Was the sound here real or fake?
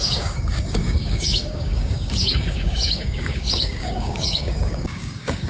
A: fake